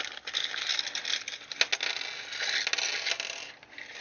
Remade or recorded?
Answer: recorded